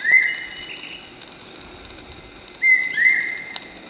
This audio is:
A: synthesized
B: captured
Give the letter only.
B